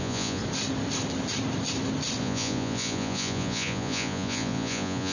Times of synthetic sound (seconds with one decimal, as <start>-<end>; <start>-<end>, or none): 0.0-0.4; 2.2-5.1